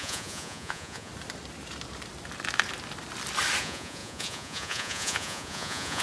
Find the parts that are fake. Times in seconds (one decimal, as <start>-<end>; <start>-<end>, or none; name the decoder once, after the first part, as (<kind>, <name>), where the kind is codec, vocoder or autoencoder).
0.0-1.1 (vocoder, Vocos); 3.6-6.0